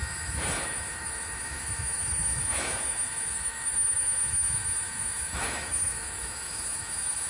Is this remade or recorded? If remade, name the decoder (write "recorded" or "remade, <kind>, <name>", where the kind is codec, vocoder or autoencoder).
remade, autoencoder, DAC-VAE